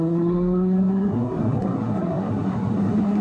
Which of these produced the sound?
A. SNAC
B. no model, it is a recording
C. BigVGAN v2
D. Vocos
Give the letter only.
A